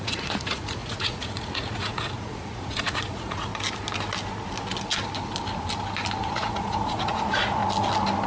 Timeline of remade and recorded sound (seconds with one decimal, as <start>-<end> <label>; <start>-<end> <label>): 0.0-3.5 remade; 3.5-6.2 recorded; 6.2-7.6 remade; 7.6-8.3 recorded